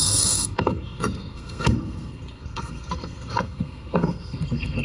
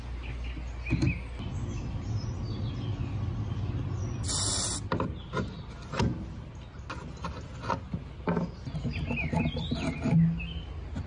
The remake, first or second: first